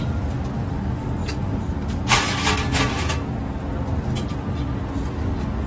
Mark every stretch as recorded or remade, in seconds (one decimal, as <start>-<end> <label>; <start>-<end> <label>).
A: 0.0-5.7 recorded